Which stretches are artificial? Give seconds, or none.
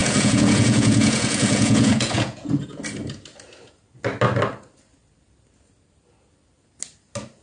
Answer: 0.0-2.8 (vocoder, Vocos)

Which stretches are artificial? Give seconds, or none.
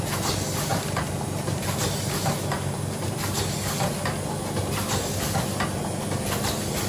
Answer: 0.7-3.4 (vocoder, BigVGAN v2)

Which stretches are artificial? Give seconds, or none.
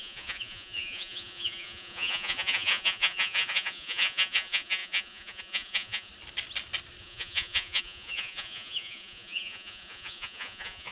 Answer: 0.0-6.1 (vocoder, Vocos); 7.0-10.9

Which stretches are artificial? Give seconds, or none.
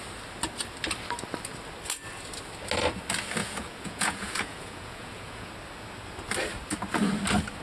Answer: 3.4-5.5 (vocoder, Vocos)